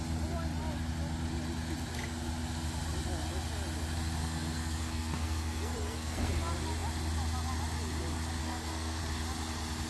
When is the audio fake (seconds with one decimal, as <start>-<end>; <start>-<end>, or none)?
4.2-6.3; 8.4-9.0